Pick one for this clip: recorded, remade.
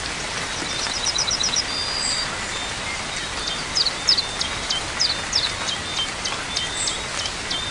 recorded